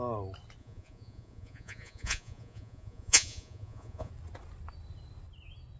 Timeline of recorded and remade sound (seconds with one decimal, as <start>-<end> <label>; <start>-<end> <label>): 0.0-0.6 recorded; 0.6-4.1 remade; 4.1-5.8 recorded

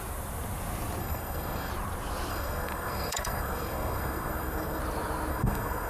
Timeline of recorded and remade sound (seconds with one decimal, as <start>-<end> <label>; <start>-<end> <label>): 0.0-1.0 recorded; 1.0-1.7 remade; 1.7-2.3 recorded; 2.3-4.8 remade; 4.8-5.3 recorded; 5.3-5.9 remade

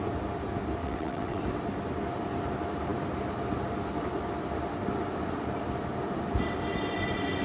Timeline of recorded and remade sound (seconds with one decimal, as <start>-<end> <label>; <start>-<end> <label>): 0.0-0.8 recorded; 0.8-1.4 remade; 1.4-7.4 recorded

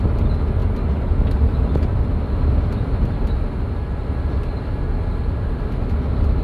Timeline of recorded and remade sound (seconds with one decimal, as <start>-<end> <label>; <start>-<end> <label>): 0.0-6.4 recorded

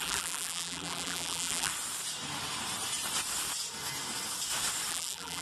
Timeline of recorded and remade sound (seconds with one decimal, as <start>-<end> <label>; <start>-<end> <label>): 0.0-1.7 remade; 1.7-4.9 recorded; 4.9-5.4 remade